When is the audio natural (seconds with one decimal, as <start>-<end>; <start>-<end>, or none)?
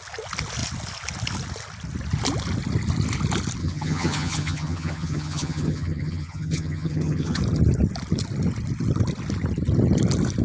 0.0-3.6; 7.4-10.4